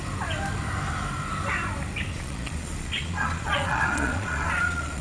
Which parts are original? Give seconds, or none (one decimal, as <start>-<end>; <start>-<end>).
0.0-2.1